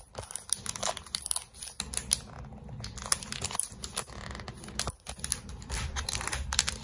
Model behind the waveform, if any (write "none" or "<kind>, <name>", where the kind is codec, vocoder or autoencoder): none